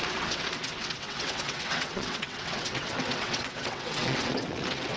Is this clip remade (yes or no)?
yes